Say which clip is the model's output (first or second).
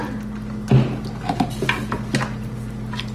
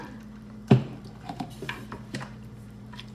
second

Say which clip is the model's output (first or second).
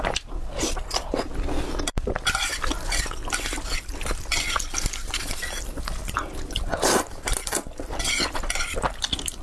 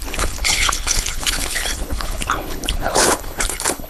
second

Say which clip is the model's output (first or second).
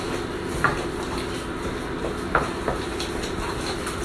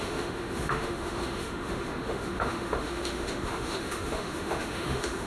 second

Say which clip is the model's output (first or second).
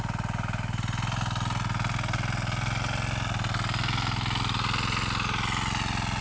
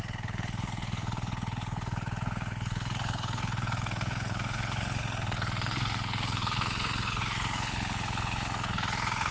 second